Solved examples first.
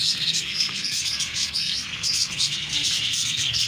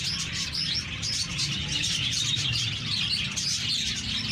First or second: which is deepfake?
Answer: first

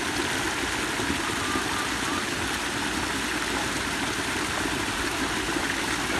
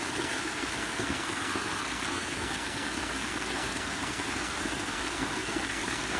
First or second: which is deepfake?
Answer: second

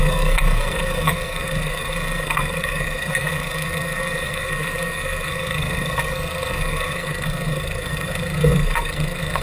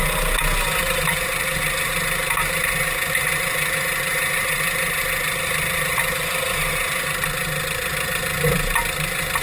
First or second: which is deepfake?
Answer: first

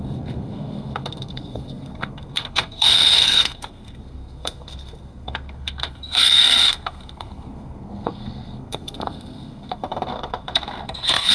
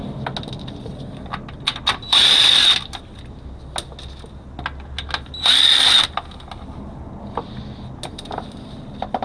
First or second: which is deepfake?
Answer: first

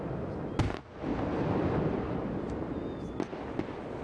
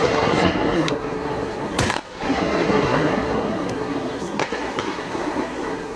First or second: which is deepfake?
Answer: second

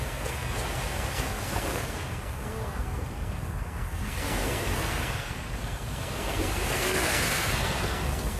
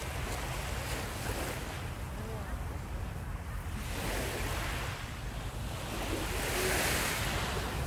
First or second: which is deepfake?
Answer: first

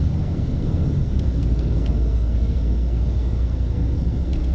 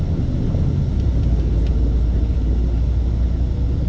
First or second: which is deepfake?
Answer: first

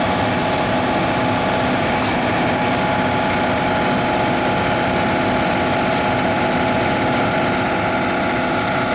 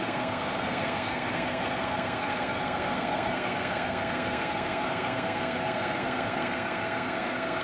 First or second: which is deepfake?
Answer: second